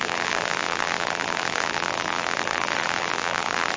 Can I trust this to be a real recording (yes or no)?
no